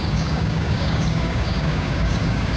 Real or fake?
fake